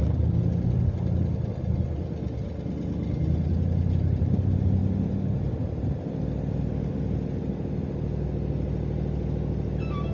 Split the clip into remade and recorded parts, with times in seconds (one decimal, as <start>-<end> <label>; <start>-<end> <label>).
0.0-10.1 recorded